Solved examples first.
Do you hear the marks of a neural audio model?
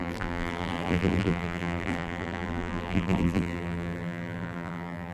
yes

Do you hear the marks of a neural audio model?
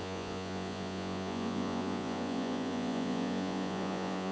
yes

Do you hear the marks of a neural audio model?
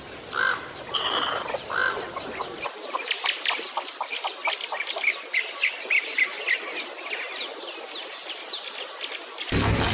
no